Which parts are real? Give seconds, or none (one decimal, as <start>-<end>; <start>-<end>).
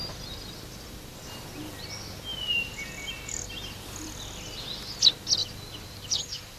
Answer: 0.5-2.3; 4.6-5.4